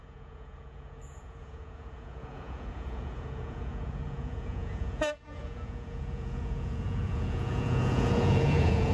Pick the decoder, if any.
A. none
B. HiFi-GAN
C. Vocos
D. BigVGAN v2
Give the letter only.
C